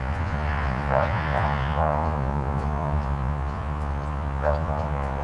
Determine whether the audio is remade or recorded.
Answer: remade